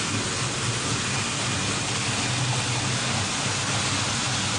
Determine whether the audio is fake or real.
real